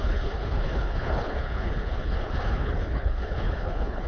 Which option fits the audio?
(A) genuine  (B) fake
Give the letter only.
B